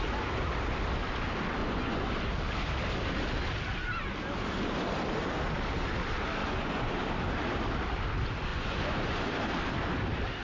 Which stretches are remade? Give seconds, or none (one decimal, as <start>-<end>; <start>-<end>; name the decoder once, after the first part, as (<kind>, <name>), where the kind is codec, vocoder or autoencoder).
1.6-2.1 (vocoder, Vocos); 6.4-6.9; 8.5-9.3